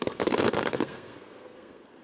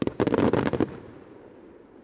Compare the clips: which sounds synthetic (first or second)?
first